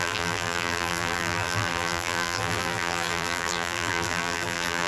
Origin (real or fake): fake